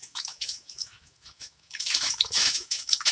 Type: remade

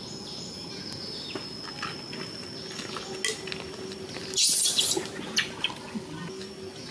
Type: recorded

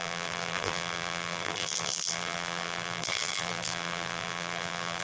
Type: remade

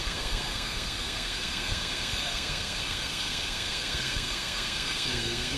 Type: remade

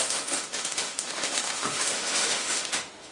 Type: remade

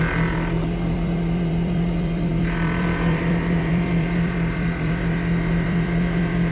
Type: remade